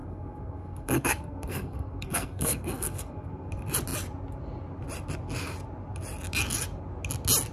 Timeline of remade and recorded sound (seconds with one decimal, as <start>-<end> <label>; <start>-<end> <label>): 0.0-3.5 remade; 3.5-7.5 recorded